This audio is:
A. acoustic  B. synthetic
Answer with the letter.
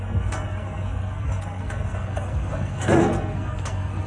B